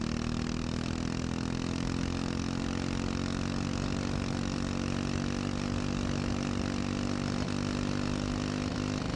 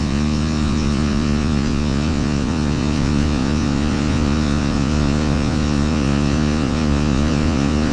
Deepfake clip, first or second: second